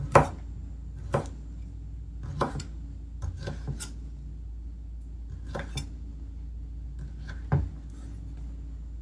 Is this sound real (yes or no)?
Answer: yes